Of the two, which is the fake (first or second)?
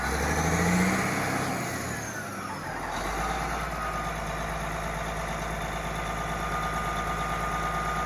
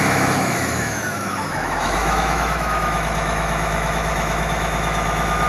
second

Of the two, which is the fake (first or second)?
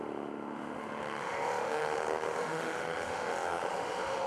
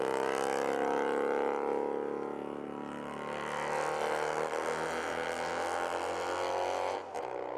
first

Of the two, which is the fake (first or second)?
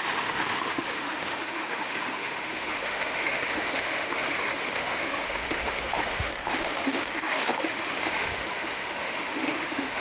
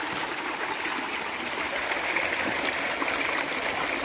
first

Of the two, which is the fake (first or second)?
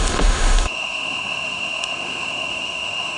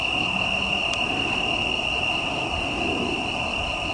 first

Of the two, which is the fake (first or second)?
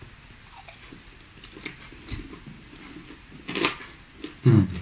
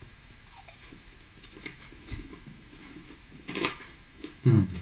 second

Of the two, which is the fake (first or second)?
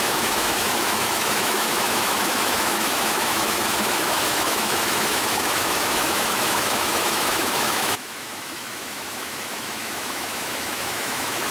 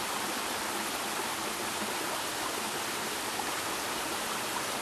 first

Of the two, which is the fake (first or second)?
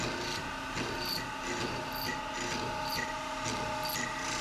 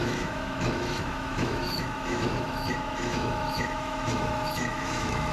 second